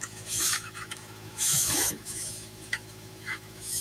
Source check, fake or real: fake